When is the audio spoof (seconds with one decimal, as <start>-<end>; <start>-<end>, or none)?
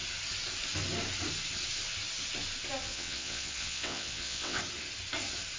2.8-4.6